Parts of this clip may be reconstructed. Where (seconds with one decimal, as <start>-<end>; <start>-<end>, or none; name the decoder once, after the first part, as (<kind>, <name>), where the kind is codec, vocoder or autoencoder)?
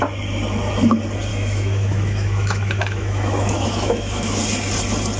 1.3-4.4 (autoencoder, DAC-VAE)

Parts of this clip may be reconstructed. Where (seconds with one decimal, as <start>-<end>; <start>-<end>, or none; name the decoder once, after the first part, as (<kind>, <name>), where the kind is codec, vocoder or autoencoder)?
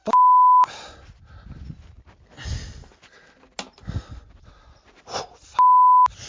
none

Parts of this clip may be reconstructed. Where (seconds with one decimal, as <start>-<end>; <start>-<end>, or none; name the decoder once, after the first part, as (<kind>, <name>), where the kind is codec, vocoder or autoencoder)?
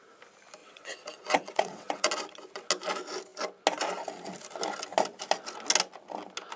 0.6-2.1 (vocoder, WaveNeXt)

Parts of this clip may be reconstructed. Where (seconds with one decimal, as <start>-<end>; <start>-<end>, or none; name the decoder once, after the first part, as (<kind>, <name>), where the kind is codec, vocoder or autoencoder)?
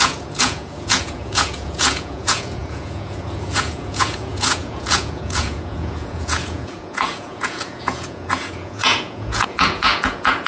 0.0-10.5 (vocoder, Vocos)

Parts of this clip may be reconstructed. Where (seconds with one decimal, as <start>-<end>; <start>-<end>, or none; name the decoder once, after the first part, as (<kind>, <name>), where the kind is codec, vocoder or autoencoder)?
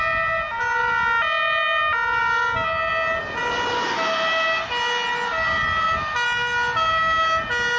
none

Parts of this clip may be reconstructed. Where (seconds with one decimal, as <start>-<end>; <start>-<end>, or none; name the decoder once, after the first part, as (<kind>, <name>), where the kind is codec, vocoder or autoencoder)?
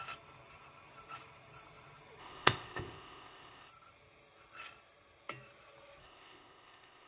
2.2-3.7 (codec, ZipCodec); 6.0-7.1